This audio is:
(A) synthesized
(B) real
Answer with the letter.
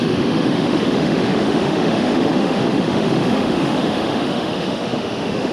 A